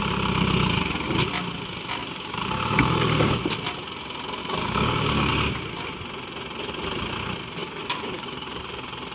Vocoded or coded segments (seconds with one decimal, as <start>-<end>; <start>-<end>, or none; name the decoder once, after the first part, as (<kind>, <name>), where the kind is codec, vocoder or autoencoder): 2.0-3.4 (codec, DAC); 4.4-5.3; 7.6-8.6